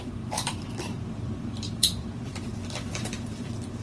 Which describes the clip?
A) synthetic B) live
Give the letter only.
A